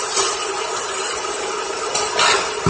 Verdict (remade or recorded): recorded